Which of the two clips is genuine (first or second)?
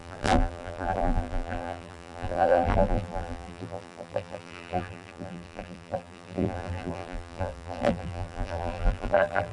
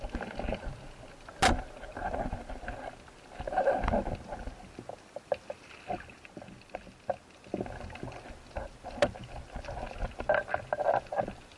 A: second